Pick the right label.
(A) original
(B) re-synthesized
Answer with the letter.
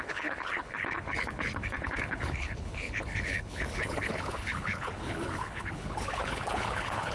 B